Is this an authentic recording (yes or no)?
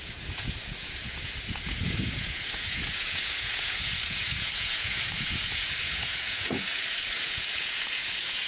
no